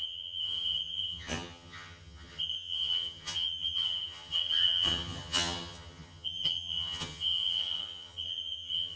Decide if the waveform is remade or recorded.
remade